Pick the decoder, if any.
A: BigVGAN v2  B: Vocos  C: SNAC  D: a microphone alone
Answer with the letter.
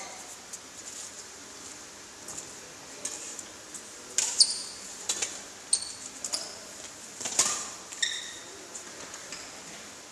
D